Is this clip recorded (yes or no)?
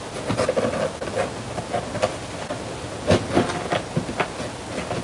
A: yes